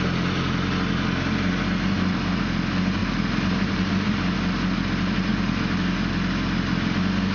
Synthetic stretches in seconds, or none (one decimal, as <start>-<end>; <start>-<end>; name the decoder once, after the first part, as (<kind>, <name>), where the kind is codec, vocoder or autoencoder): 3.0-3.9 (vocoder, BigVGAN v2)